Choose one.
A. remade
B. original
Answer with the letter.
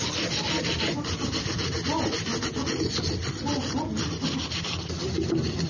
B